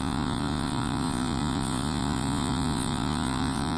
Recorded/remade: remade